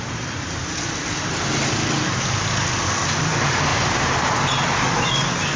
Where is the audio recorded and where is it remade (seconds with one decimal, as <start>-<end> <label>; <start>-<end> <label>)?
0.0-3.7 recorded; 3.7-4.4 remade; 4.4-5.6 recorded